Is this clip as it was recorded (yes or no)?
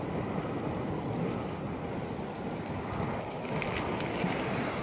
yes